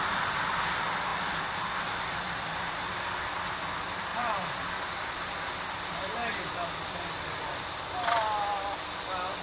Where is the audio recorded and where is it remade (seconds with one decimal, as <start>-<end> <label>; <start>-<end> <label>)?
0.0-4.1 recorded; 4.1-5.3 remade; 5.3-9.4 recorded